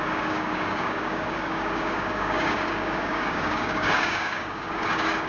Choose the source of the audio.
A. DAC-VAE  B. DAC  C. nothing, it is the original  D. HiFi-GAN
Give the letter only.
B